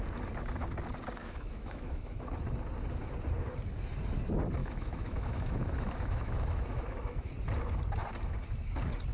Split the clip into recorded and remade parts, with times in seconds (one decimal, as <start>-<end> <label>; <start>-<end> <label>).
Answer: 0.0-1.2 recorded; 1.2-2.3 remade; 2.3-4.6 recorded; 4.6-7.3 remade; 7.3-9.1 recorded